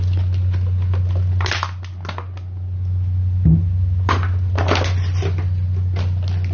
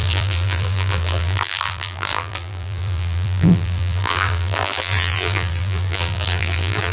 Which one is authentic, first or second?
first